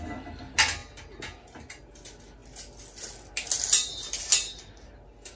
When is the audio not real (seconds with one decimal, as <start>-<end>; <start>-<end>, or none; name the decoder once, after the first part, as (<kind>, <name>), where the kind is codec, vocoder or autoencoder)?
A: none